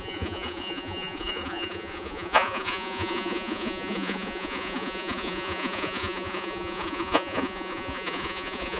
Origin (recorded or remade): remade